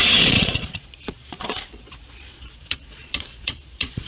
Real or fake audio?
fake